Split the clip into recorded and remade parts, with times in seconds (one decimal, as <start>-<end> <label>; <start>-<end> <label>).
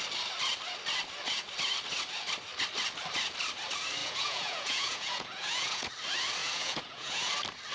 0.0-4.0 recorded; 4.0-5.9 remade; 5.9-6.4 recorded; 6.4-7.3 remade; 7.3-7.7 recorded